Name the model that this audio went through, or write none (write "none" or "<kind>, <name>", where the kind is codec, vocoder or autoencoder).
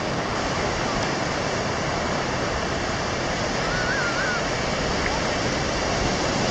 none